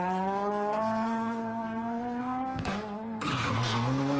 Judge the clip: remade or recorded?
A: remade